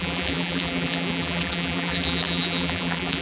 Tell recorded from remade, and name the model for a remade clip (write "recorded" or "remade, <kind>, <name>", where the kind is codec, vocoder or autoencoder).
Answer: remade, vocoder, BigVGAN v2